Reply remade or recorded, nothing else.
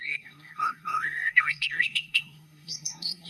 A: remade